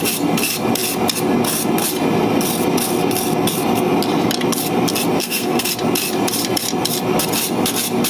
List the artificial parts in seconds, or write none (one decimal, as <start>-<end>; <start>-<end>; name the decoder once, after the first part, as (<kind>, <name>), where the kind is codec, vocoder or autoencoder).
5.2-5.7 (codec, SNAC)